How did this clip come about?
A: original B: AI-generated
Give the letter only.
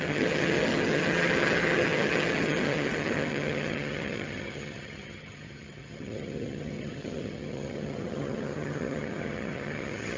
B